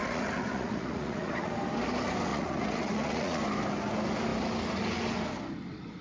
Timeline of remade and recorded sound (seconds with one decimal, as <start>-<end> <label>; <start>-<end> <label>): 0.0-1.5 remade; 1.5-2.3 recorded; 2.3-3.4 remade; 3.4-6.0 recorded